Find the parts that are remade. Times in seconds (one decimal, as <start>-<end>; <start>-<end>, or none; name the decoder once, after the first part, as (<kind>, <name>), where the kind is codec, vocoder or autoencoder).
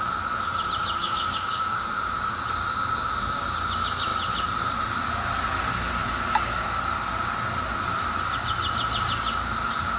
1.0-1.8 (codec, DAC)